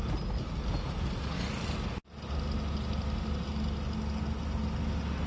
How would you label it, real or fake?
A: real